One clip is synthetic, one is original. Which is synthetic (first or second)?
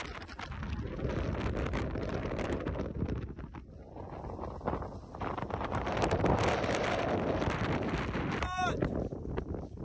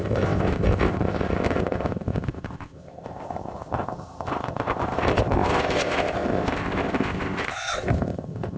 second